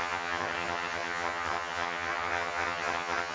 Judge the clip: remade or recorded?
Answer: remade